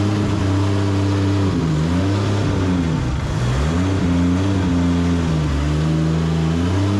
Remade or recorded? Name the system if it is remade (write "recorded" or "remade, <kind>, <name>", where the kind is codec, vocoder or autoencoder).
recorded